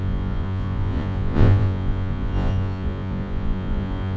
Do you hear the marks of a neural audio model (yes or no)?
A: yes